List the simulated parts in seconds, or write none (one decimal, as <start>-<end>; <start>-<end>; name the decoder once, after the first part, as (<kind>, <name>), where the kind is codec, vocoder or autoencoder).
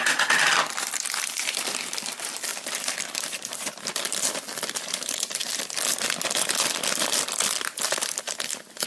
0.0-8.9 (vocoder, BigVGAN v2)